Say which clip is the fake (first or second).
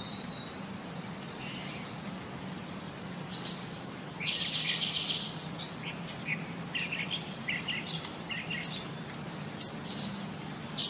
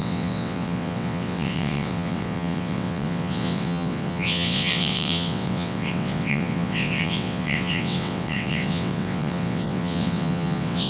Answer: second